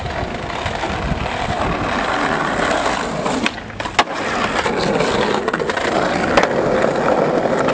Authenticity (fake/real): real